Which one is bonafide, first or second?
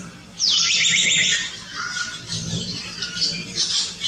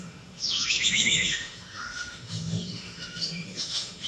first